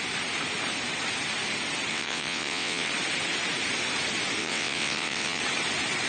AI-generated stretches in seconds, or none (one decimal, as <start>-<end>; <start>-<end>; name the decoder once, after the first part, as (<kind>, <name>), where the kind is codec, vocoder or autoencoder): 1.9-2.9 (vocoder, WaveNeXt); 4.4-5.4